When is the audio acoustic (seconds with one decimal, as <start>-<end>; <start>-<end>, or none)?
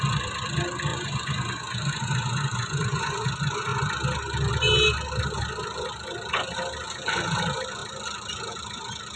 0.0-0.9; 3.3-9.2